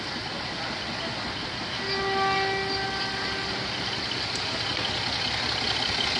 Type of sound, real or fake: real